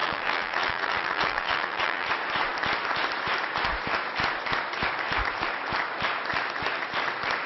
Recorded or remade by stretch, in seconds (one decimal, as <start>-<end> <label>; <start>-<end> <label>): 0.0-2.1 remade; 2.1-7.5 recorded